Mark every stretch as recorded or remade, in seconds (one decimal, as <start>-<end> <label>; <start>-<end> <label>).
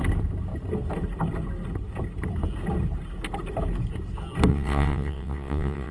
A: 0.0-4.5 recorded; 4.5-5.9 remade